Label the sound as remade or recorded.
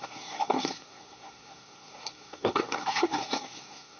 remade